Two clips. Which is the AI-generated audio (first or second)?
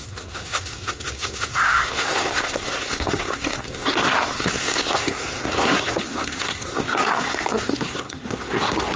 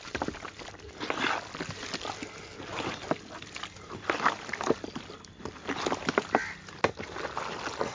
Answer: first